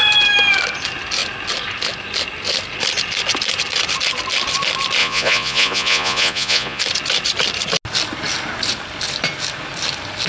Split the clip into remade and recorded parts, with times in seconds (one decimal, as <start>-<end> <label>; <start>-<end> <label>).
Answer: 0.0-5.0 recorded; 5.0-6.8 remade; 6.8-10.3 recorded